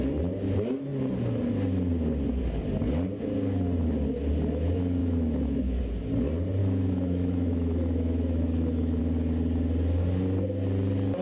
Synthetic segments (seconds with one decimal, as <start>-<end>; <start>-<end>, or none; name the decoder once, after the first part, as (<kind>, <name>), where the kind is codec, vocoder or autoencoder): 5.0-5.8 (autoencoder, DAC-VAE); 6.6-9.0